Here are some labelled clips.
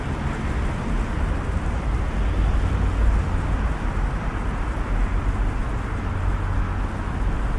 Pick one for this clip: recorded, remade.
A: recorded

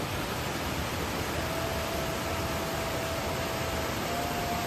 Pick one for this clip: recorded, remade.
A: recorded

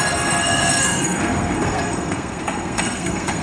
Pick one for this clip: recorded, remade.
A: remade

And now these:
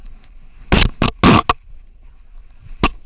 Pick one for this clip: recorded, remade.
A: recorded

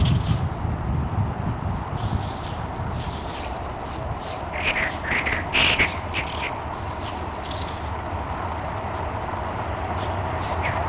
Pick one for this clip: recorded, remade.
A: recorded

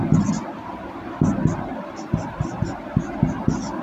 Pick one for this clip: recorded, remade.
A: recorded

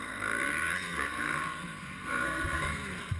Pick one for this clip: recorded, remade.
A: remade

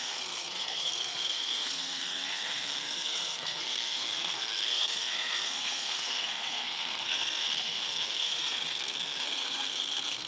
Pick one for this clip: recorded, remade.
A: remade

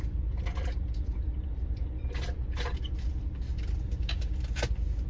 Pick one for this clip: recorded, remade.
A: recorded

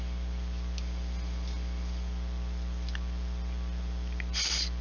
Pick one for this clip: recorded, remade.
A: recorded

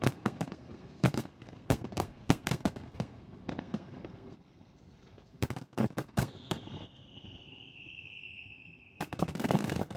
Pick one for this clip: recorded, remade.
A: remade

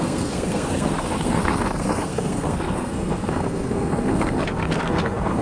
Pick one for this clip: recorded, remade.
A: remade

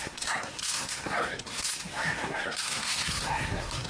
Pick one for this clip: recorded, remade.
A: remade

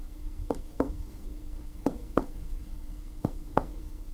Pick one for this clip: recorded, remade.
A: remade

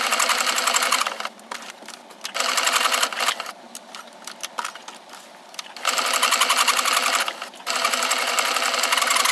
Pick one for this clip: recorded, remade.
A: recorded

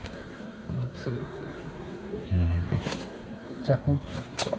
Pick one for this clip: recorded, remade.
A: remade